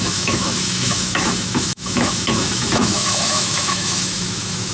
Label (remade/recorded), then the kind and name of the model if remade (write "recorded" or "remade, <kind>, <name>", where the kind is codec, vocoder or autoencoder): remade, autoencoder, DAC-VAE